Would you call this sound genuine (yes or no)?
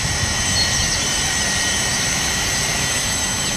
no